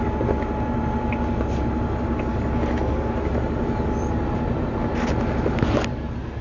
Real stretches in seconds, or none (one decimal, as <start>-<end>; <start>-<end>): 0.0-2.3; 3.2-6.4